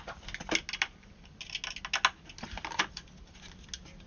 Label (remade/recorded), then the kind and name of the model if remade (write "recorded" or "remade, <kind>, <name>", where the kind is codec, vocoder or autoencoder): recorded